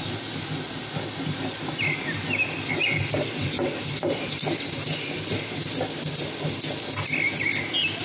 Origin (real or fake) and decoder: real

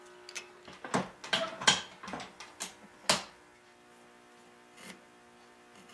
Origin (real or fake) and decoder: real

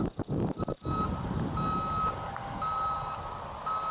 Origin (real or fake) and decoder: real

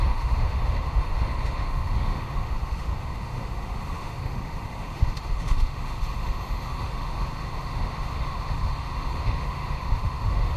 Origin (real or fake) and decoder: fake, autoencoder, DAC-VAE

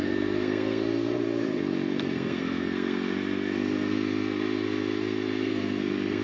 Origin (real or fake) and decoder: fake, codec, SNAC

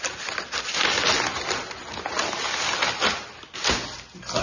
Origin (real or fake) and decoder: real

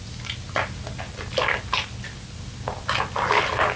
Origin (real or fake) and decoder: real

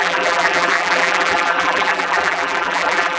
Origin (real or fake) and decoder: fake, vocoder, BigVGAN v2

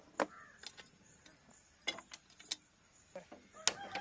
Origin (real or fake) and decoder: real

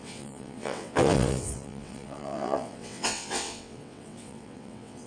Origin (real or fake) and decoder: fake, vocoder, WaveNeXt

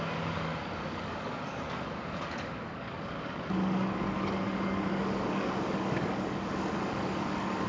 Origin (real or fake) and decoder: fake, codec, DAC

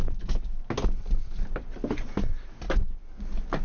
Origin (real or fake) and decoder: real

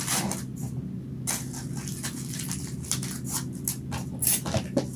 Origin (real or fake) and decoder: real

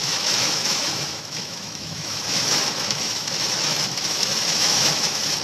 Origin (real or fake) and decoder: fake, autoencoder, DAC-VAE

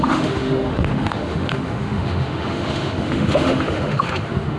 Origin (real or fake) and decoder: fake, autoencoder, DAC-VAE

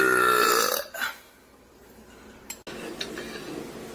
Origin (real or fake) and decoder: real